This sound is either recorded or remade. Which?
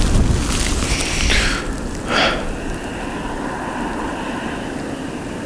recorded